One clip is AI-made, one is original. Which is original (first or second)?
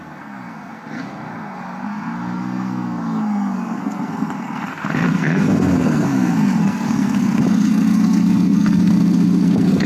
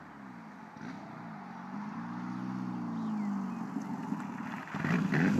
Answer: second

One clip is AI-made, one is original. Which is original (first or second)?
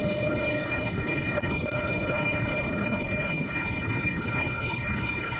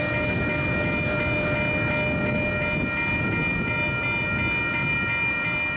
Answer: second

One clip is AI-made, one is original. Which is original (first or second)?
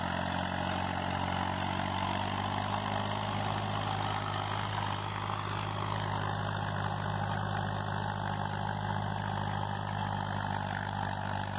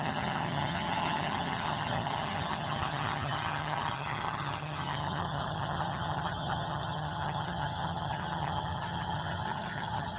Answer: first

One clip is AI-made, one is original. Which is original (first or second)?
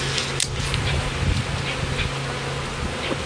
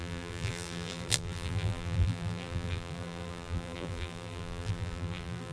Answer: first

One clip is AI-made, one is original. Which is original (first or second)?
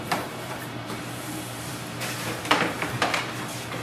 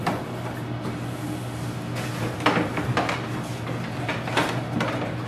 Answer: second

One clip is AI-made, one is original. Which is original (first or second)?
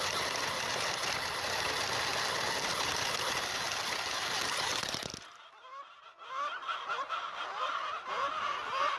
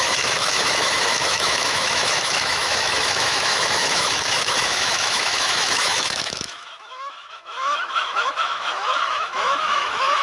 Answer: first